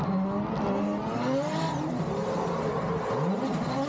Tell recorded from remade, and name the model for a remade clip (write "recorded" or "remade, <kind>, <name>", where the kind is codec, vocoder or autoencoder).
recorded